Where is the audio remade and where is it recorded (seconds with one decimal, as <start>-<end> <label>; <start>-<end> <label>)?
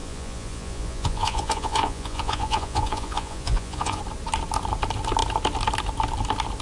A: 0.0-4.0 remade; 4.0-6.6 recorded